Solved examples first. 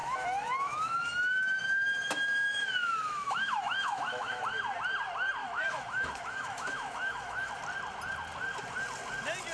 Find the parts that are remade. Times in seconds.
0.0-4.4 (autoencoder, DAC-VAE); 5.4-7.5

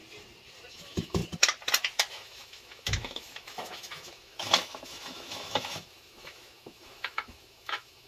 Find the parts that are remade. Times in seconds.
0.7-1.2 (autoencoder, DAC-VAE); 2.1-8.1

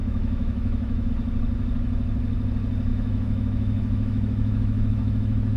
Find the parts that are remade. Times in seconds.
0.0-1.1 (autoencoder, DAC-VAE); 2.9-5.6

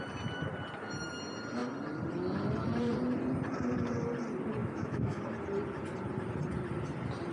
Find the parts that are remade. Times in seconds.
4.6-5.2 (autoencoder, DAC-VAE)

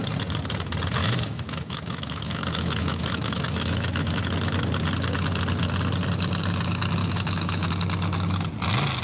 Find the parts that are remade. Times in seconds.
1.0-4.2 (autoencoder, DAC-VAE); 7.0-7.7